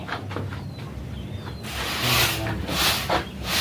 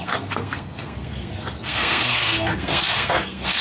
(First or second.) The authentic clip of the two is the first